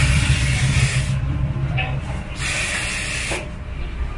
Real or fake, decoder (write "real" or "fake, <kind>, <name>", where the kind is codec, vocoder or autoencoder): fake, vocoder, BigVGAN v2